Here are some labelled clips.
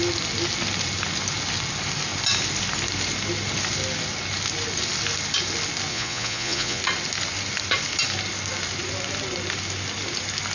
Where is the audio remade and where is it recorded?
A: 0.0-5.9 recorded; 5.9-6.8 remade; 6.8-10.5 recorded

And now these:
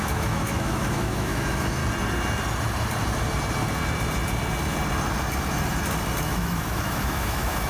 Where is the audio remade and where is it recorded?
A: 0.0-1.8 remade; 1.8-6.2 recorded; 6.2-7.7 remade

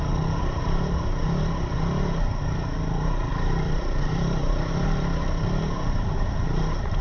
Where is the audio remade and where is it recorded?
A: 0.0-3.3 recorded; 3.3-4.7 remade; 4.7-7.0 recorded

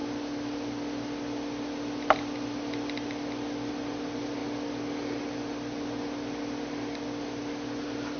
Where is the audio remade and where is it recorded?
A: 0.0-8.2 recorded

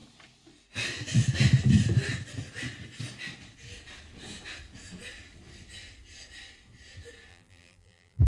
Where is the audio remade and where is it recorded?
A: 0.0-7.3 recorded; 7.3-8.3 remade

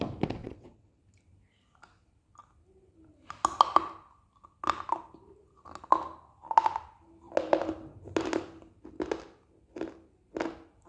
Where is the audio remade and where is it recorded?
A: 0.0-0.4 recorded; 0.4-1.0 remade; 1.0-10.9 recorded

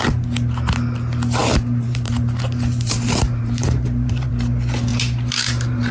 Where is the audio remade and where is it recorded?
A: 0.0-1.4 recorded; 1.4-4.3 remade; 4.3-4.9 recorded; 4.9-5.9 remade

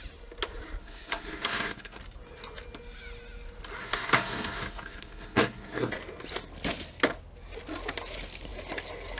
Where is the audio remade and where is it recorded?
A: 0.0-0.8 recorded; 0.8-2.0 remade; 2.0-3.8 recorded; 3.8-5.9 remade; 5.9-9.2 recorded